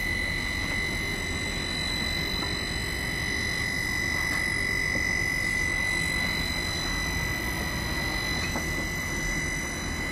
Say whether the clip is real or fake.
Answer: real